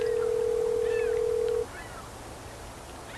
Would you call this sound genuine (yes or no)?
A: yes